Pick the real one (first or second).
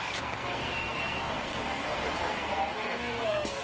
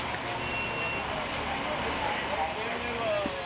second